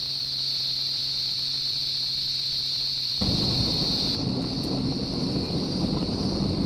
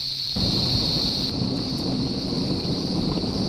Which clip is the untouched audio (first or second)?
first